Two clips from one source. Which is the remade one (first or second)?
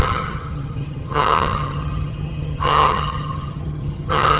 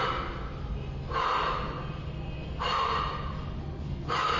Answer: first